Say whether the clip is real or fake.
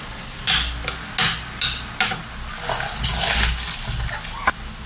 real